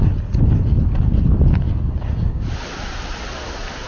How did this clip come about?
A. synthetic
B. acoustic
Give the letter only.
B